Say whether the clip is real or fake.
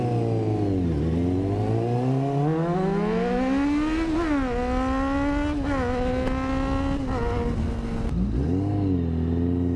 real